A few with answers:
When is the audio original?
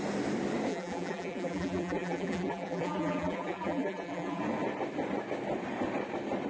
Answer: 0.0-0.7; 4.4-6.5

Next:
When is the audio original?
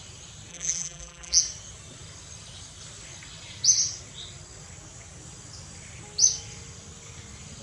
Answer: 0.0-0.5; 1.4-7.6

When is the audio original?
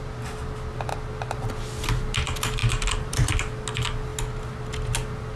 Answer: 0.0-2.6; 3.3-5.4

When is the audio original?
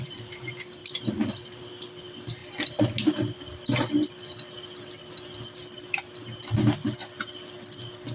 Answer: 0.8-1.7; 2.4-5.0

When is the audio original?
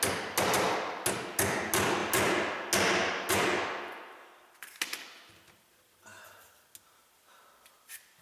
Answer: 0.0-8.2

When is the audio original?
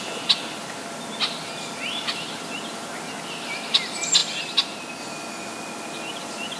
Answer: 0.0-6.6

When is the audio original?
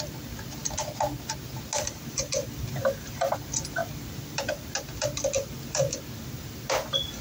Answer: 0.0-7.2